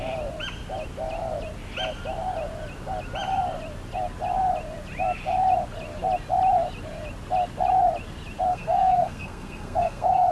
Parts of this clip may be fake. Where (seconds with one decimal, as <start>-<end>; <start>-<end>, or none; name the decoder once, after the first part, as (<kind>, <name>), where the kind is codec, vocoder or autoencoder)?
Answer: 8.5-10.3 (codec, SNAC)